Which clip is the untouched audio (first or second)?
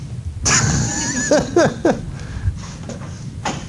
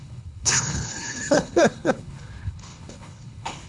first